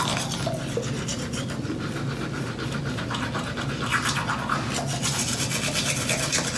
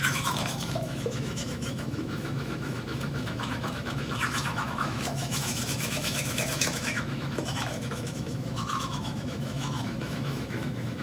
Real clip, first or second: first